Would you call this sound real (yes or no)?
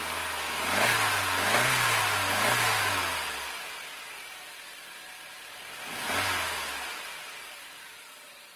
yes